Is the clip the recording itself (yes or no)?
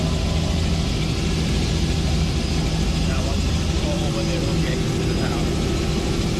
yes